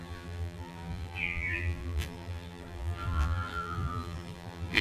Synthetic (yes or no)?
yes